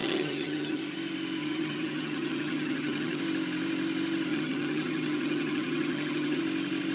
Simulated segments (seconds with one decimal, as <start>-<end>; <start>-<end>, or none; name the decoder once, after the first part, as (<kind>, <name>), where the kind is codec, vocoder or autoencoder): 0.0-0.8 (vocoder, HiFi-GAN); 1.4-3.2; 4.3-6.4